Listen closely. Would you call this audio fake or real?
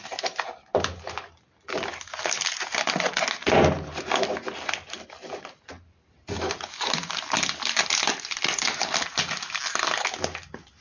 real